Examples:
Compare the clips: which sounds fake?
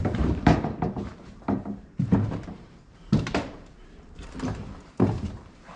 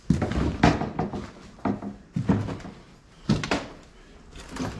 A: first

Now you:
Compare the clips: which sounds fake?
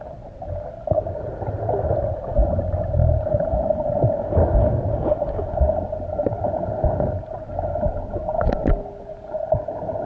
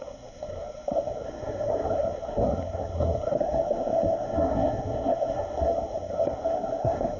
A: second